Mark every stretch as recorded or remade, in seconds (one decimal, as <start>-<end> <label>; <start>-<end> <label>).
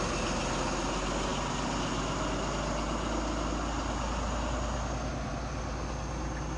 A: 0.0-6.6 recorded